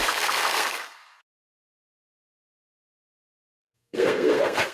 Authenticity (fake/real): fake